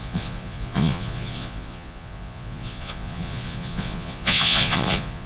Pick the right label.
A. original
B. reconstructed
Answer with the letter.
B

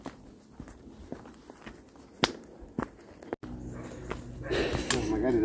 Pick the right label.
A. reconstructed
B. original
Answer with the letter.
B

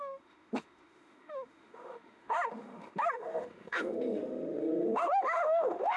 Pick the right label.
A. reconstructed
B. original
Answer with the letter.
A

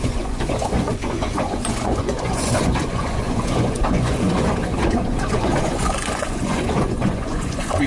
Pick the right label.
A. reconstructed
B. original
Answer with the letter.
A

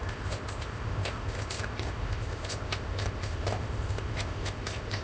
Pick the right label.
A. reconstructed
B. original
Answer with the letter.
A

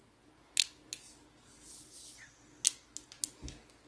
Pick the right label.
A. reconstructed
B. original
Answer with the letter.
B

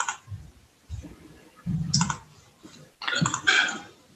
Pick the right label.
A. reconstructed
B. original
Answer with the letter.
B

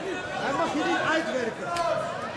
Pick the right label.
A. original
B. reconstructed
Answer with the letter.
A